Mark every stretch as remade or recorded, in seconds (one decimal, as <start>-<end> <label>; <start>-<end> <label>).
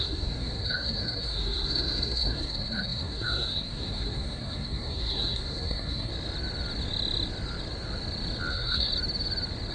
0.0-6.1 remade; 6.1-8.5 recorded; 8.5-8.9 remade; 8.9-9.7 recorded